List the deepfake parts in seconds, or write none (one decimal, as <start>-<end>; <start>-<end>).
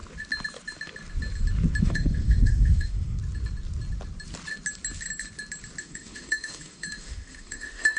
1.8-3.2; 5.8-8.0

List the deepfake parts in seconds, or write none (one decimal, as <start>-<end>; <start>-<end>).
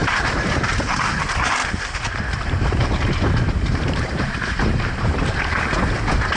0.0-0.7; 1.6-5.4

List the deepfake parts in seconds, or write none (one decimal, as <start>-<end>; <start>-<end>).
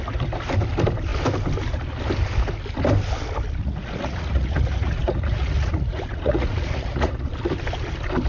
3.6-7.3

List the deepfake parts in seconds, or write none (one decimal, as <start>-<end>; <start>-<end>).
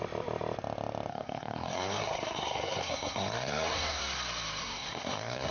1.1-4.0; 4.6-5.5